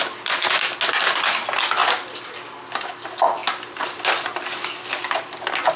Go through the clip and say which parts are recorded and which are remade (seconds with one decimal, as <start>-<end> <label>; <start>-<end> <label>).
0.0-5.8 recorded